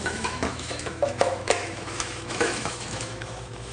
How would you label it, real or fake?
fake